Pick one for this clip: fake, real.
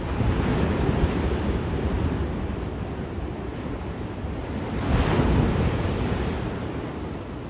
real